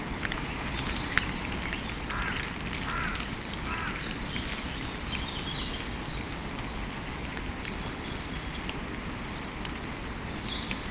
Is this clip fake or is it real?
real